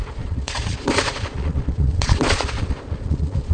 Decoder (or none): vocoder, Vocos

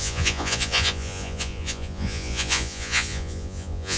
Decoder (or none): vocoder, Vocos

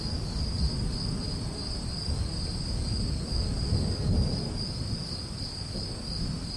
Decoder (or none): none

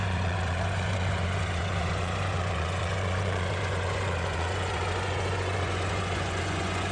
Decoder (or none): vocoder, Vocos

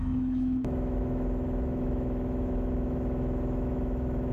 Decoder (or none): autoencoder, DAC-VAE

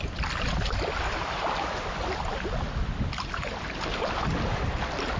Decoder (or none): none